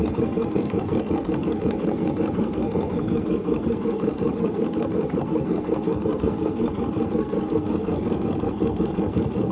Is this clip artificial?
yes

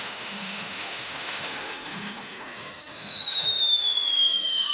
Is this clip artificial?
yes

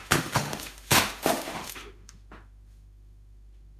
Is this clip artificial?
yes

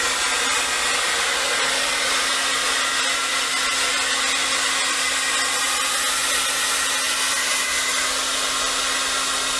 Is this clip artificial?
no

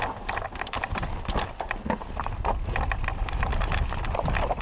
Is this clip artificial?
no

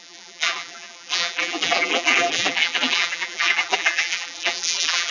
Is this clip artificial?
yes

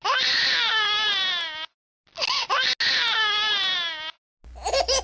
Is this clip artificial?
no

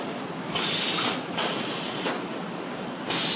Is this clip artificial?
no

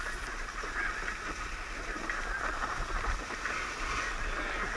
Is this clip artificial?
no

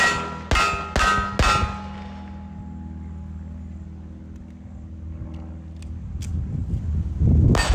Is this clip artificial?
no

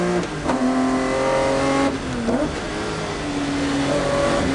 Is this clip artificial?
no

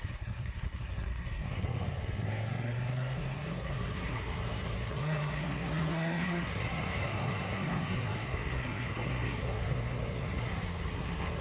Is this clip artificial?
yes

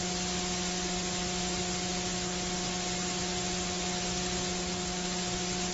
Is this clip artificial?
no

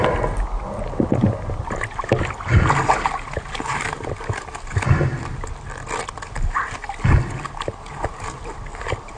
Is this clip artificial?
no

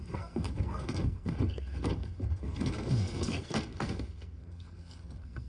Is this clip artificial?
yes